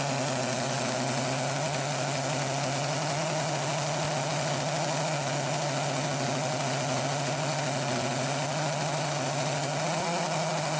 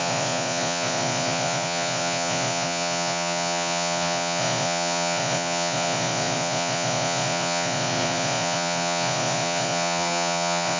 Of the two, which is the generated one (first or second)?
second